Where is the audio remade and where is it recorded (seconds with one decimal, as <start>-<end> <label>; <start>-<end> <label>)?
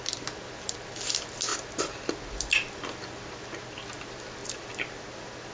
0.0-5.5 recorded